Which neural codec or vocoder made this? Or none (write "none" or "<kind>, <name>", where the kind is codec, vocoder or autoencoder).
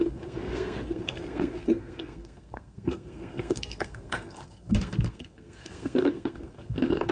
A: codec, SNAC